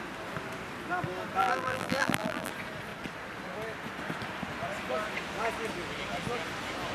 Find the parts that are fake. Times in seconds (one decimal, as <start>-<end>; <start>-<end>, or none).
1.4-2.5